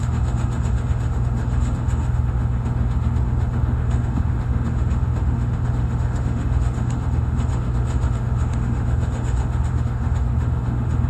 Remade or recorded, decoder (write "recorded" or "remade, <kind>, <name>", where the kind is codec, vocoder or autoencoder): remade, autoencoder, DAC-VAE